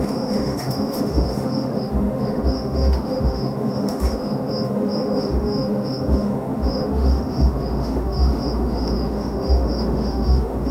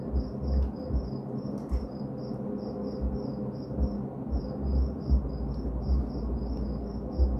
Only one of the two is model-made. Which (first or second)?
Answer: first